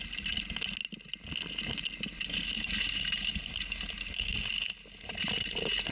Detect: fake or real real